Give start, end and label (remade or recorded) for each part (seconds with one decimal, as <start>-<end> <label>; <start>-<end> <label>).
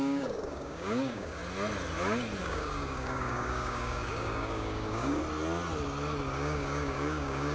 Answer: 0.0-1.4 remade; 1.4-2.4 recorded; 2.4-5.2 remade; 5.2-6.3 recorded; 6.3-7.5 remade